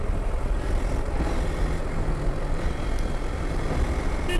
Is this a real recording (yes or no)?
yes